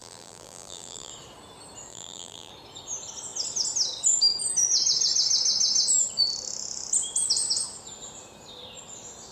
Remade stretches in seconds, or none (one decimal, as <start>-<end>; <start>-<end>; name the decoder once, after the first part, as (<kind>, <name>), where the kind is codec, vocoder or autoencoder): 0.0-1.1 (vocoder, BigVGAN v2); 1.9-2.5